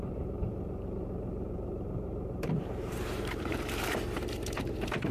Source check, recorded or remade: remade